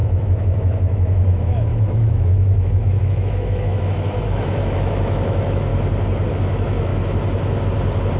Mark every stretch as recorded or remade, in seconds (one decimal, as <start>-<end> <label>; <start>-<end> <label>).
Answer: 0.0-5.7 remade; 5.7-6.3 recorded; 6.3-6.9 remade; 6.9-8.2 recorded